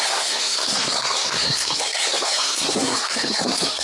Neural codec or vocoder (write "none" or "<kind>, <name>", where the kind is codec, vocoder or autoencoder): codec, SNAC